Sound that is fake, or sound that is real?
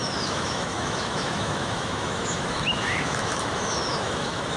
fake